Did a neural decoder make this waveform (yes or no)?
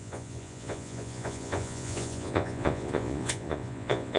yes